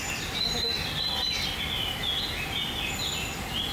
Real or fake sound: real